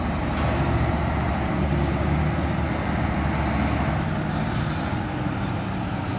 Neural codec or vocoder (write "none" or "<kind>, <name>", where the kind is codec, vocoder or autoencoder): none